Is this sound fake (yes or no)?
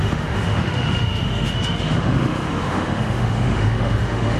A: yes